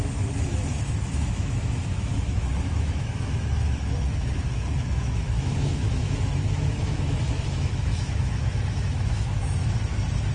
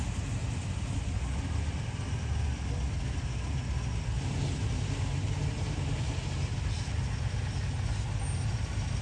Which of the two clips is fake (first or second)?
first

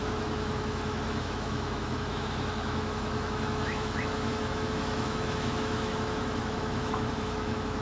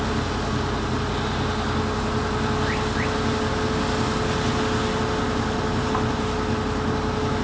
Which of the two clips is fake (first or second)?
first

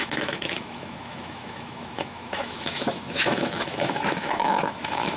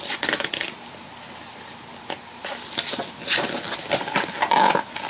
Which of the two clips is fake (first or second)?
first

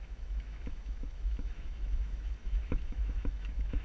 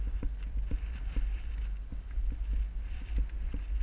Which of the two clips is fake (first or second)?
first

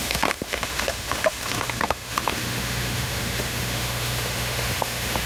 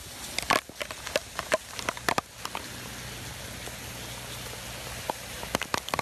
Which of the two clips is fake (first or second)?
first